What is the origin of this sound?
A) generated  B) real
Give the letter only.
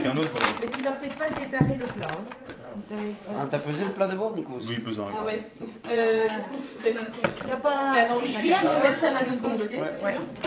A